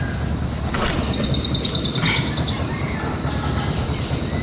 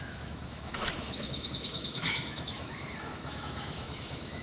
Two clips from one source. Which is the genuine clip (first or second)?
first